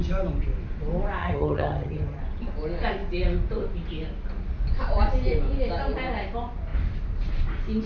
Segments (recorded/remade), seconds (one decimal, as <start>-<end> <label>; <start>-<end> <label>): 0.0-1.2 recorded; 1.2-2.2 remade; 2.2-7.9 recorded